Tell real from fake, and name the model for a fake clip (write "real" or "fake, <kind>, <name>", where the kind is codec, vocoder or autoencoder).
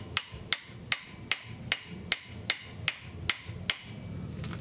real